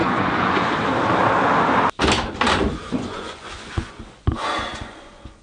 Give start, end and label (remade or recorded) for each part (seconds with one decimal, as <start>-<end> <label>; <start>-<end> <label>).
0.0-0.7 remade; 0.7-2.8 recorded; 2.8-5.4 remade